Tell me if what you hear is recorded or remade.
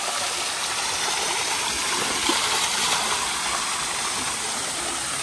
recorded